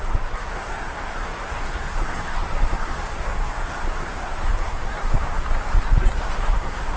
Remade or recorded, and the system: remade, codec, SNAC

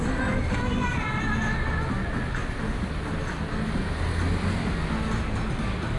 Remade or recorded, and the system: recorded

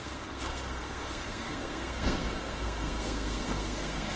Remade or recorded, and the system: remade, codec, SNAC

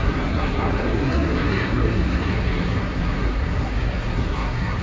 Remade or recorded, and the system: remade, codec, SNAC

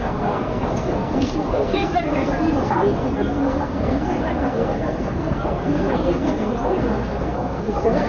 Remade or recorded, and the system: remade, codec, SNAC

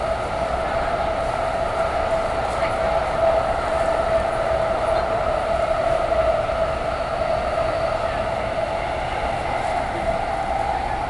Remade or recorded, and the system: recorded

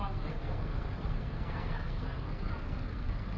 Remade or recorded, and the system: remade, codec, SNAC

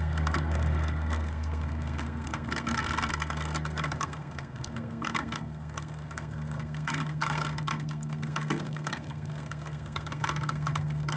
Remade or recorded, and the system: remade, codec, SNAC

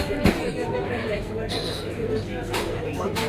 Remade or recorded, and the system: remade, codec, SNAC